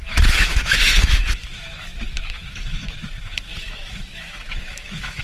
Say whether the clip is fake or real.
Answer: fake